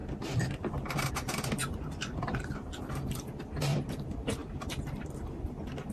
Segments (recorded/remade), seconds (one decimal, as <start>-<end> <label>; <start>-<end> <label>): 0.0-4.4 remade; 4.4-5.9 recorded